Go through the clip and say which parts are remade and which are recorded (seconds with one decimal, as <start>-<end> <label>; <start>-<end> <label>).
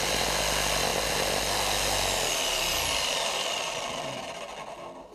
0.0-5.1 recorded